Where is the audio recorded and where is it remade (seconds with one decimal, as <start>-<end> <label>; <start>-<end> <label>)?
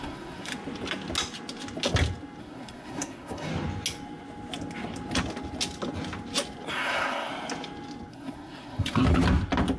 0.0-0.5 remade; 0.5-2.4 recorded; 2.4-3.5 remade; 3.5-6.7 recorded; 6.7-7.3 remade; 7.3-8.1 recorded; 8.1-9.0 remade; 9.0-9.8 recorded